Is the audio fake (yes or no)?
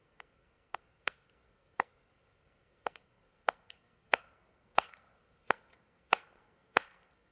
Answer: yes